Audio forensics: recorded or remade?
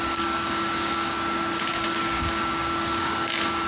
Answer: remade